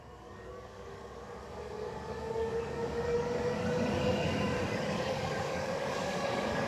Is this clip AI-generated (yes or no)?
yes